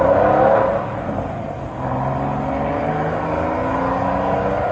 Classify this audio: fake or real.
real